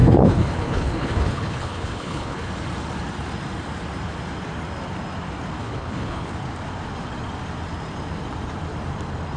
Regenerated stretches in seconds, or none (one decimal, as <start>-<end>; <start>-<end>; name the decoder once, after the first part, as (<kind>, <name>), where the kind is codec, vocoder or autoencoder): 0.0-2.5 (codec, HILCodec); 5.6-6.3